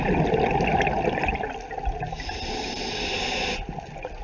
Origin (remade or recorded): recorded